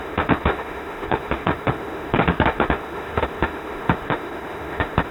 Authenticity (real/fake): fake